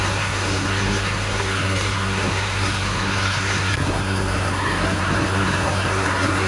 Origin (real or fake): fake